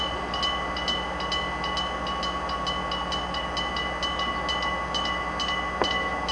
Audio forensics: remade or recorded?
recorded